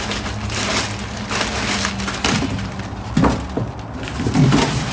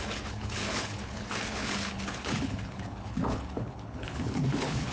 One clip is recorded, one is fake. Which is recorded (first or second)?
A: first